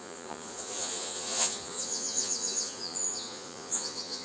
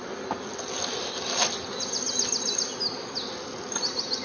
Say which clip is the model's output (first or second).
first